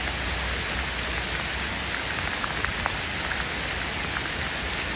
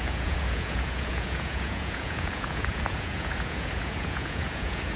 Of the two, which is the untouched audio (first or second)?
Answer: first